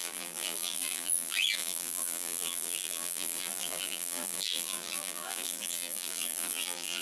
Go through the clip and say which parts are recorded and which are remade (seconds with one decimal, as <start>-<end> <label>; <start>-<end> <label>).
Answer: 0.0-7.0 remade